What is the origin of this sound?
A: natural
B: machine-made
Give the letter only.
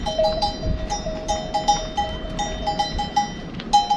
A